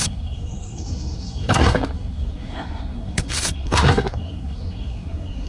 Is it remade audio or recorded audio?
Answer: remade